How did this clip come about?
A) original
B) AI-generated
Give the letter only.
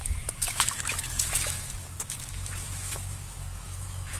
B